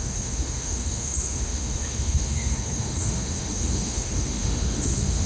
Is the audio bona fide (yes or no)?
no